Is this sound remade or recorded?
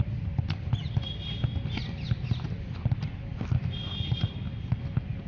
recorded